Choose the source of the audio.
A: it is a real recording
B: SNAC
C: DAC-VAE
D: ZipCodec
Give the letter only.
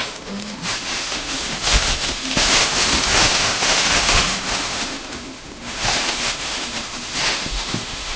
C